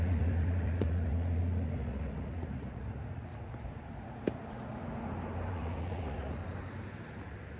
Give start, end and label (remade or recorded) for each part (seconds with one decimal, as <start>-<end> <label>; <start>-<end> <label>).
0.0-3.3 remade; 3.3-5.5 recorded; 5.5-6.4 remade; 6.4-7.6 recorded

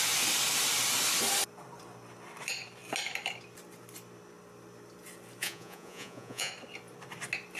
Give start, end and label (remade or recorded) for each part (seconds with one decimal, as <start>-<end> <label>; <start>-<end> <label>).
0.0-5.4 recorded; 5.4-6.5 remade; 6.5-7.6 recorded

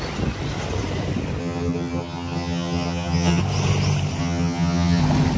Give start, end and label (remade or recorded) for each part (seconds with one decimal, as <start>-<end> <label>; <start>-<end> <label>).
0.0-1.4 recorded; 1.4-3.4 remade; 3.4-4.2 recorded; 4.2-5.0 remade; 5.0-5.4 recorded

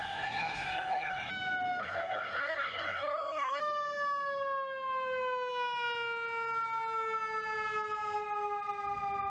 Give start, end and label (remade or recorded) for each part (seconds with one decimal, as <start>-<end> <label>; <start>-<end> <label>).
0.0-1.3 remade; 1.3-1.8 recorded; 1.8-3.6 remade; 3.6-9.3 recorded

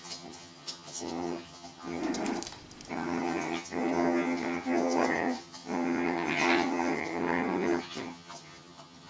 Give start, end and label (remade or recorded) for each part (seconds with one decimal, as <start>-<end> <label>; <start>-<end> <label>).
0.0-2.0 remade; 2.0-2.9 recorded; 2.9-9.1 remade